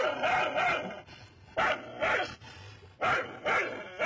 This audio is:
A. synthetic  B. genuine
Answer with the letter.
B